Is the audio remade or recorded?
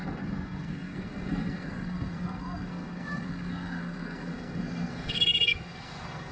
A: remade